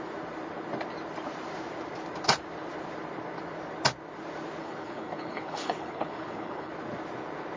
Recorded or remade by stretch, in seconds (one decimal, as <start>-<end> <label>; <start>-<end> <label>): 0.0-4.6 recorded; 4.6-6.7 remade; 6.7-7.6 recorded